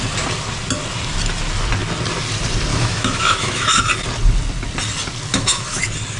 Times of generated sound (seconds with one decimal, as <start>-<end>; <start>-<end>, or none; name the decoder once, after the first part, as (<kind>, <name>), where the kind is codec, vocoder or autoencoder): 2.7-3.8 (autoencoder, DAC-VAE); 5.3-5.8